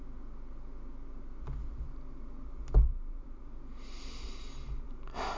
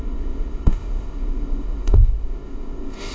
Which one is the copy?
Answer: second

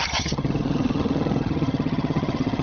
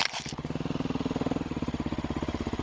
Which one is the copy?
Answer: first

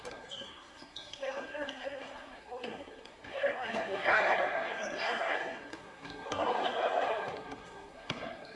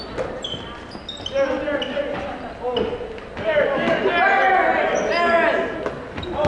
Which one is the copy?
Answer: first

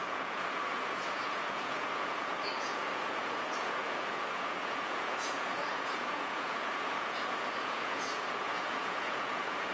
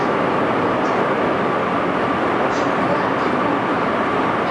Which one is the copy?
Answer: first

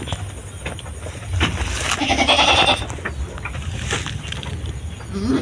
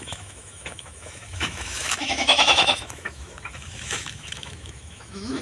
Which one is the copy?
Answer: second